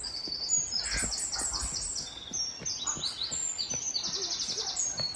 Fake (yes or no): no